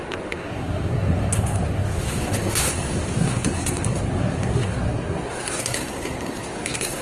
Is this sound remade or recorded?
remade